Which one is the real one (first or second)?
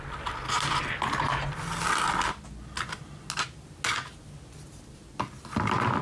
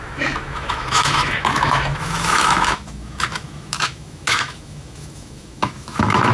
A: first